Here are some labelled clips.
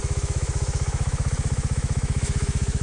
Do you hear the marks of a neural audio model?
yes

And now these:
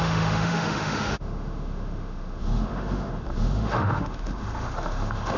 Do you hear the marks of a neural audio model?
yes